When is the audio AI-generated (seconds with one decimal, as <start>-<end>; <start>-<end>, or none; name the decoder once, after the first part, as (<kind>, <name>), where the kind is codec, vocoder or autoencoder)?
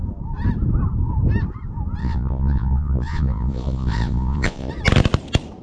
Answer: 2.0-4.7 (vocoder, Vocos)